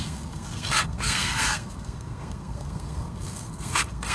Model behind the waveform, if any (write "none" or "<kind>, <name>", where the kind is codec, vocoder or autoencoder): codec, SNAC